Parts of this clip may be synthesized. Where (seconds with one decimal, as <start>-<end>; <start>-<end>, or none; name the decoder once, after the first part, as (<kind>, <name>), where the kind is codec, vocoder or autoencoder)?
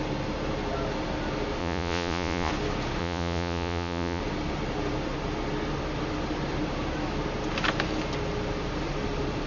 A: 1.6-2.5 (vocoder, Vocos); 3.0-4.2